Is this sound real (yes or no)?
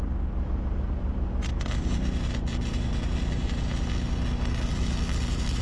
yes